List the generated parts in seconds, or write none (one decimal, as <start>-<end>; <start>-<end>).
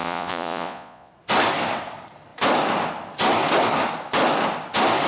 0.0-1.1